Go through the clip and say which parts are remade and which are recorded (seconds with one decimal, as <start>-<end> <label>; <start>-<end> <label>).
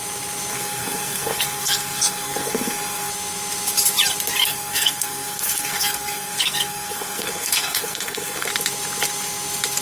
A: 0.0-0.5 recorded; 0.5-3.1 remade; 3.1-4.4 recorded; 4.4-8.5 remade; 8.5-9.8 recorded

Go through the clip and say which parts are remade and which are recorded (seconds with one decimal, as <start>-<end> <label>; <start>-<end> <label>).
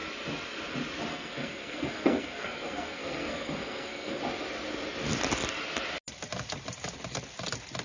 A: 0.0-1.1 recorded; 1.1-4.2 remade; 4.2-7.8 recorded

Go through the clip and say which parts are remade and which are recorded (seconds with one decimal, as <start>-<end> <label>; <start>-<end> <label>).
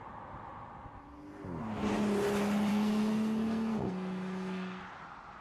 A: 0.0-2.7 recorded; 2.7-4.8 remade; 4.8-5.4 recorded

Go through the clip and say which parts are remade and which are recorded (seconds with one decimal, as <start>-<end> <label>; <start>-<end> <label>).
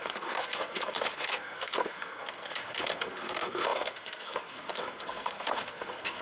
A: 0.0-6.2 remade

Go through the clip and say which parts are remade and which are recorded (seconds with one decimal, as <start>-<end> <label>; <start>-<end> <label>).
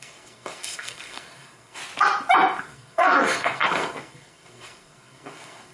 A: 0.0-1.8 remade; 1.8-2.6 recorded; 2.6-5.7 remade